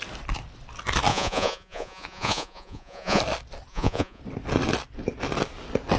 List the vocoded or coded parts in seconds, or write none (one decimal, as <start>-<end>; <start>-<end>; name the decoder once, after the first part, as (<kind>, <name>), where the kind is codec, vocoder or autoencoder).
1.1-3.2 (vocoder, Vocos); 3.7-4.2